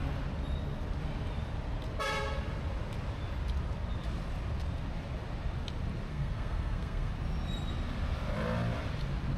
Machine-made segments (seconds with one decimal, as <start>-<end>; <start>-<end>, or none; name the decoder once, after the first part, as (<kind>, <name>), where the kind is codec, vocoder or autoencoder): 6.1-7.1 (codec, SNAC)